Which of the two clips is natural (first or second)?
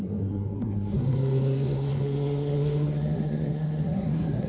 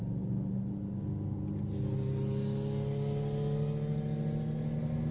second